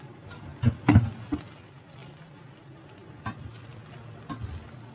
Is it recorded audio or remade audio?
recorded